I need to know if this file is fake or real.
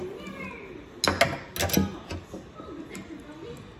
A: real